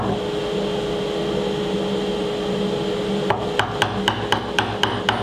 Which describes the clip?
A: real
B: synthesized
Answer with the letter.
A